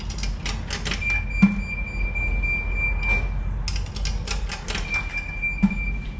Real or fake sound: real